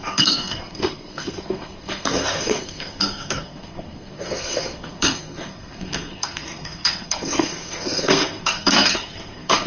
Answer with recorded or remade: remade